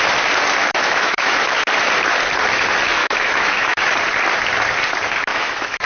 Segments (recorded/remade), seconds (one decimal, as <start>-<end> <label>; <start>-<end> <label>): 0.0-0.6 recorded; 0.6-1.6 remade; 1.6-3.0 recorded; 3.0-3.9 remade; 3.9-5.3 recorded; 5.3-5.9 remade

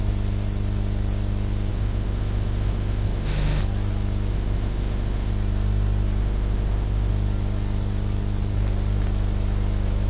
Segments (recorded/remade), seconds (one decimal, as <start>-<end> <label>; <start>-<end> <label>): 0.0-1.7 recorded; 1.7-3.6 remade; 3.6-4.3 recorded; 4.3-5.3 remade; 5.3-6.2 recorded; 6.2-7.1 remade; 7.1-10.1 recorded